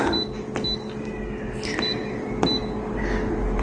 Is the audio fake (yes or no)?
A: no